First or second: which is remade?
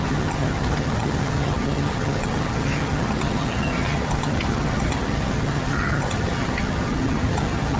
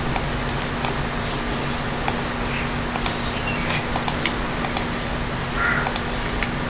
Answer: first